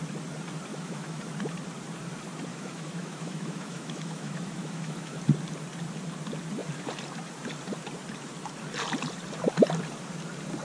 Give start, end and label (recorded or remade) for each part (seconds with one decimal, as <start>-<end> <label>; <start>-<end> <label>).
0.0-0.7 recorded; 0.7-1.2 remade; 1.2-2.5 recorded; 2.5-5.2 remade; 5.2-10.6 recorded